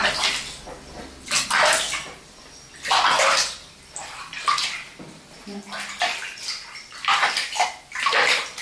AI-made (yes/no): no